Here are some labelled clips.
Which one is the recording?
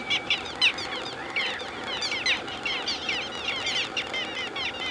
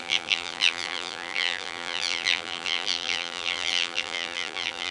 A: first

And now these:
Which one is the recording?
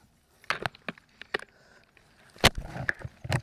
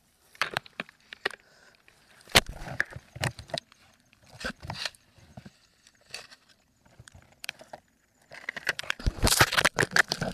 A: first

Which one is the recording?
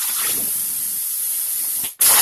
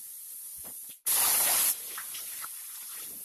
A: first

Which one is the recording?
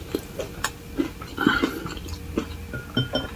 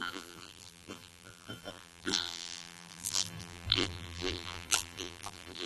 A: first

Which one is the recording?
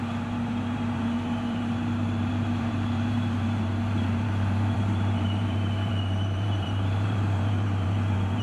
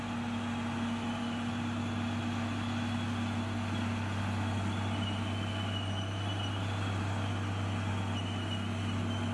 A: second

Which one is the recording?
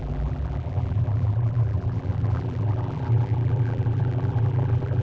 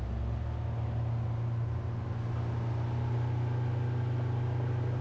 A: second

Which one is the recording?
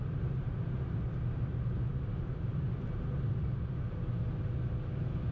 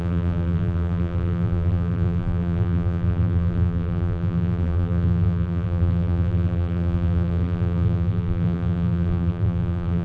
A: first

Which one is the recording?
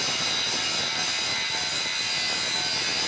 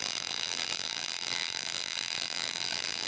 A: first